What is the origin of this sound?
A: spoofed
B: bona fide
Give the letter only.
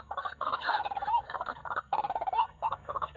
A